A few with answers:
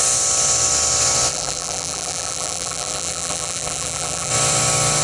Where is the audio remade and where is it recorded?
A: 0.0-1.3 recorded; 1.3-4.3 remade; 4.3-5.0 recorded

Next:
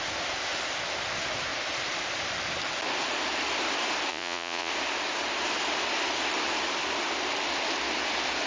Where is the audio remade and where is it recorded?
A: 0.0-4.1 recorded; 4.1-4.7 remade; 4.7-8.5 recorded

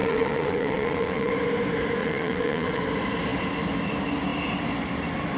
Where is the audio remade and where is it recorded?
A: 0.0-1.3 remade; 1.3-2.0 recorded; 2.0-2.8 remade; 2.8-5.4 recorded

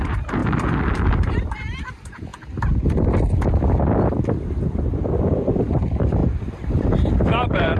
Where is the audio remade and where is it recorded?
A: 0.0-0.4 remade; 0.4-1.1 recorded; 1.1-2.3 remade; 2.3-5.2 recorded; 5.2-7.8 remade

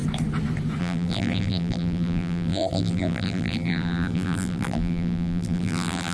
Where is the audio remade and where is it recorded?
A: 0.0-0.8 recorded; 0.8-6.1 remade

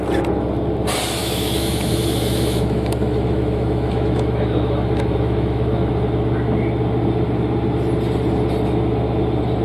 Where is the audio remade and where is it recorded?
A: 0.0-1.2 recorded; 1.2-5.9 remade; 5.9-9.6 recorded

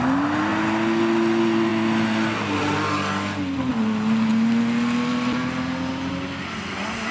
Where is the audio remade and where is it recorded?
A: 0.0-7.1 recorded